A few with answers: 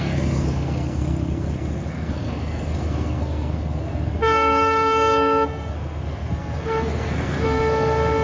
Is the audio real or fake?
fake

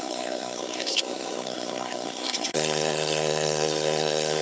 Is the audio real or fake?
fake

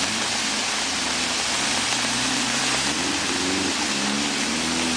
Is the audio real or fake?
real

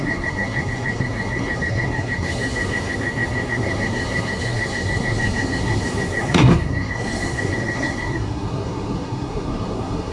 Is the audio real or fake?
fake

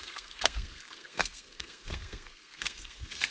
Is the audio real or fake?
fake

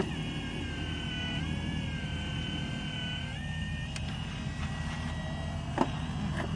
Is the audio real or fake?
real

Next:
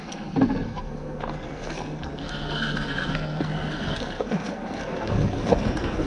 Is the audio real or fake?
fake